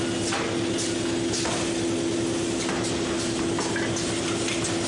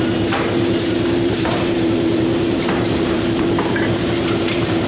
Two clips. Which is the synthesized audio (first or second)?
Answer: second